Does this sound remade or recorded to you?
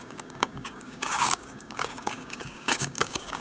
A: remade